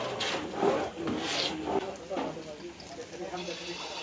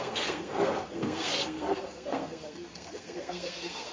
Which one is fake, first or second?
second